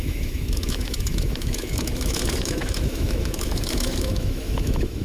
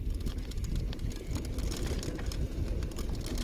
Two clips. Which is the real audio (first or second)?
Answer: second